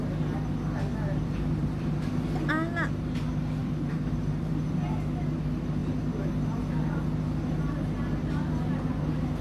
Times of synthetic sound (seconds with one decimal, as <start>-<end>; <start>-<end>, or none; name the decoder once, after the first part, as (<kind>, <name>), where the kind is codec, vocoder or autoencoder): 0.9-2.1 (vocoder, BigVGAN v2); 3.6-4.6